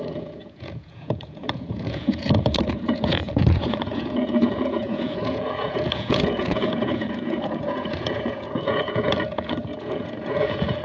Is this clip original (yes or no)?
no